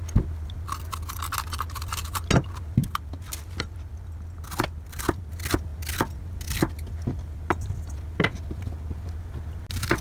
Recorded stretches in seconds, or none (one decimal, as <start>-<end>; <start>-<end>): 0.0-10.0